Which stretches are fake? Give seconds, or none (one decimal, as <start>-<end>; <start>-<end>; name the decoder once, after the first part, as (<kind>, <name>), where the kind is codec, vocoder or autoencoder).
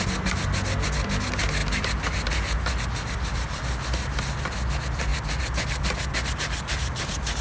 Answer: none